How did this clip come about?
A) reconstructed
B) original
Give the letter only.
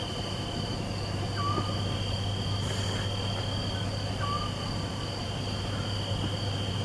B